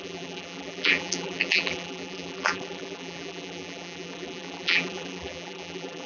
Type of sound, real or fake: fake